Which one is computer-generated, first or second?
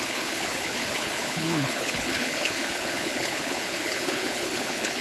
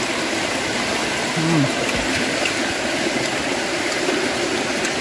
first